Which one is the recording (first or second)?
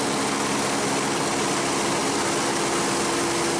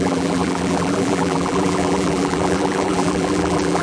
first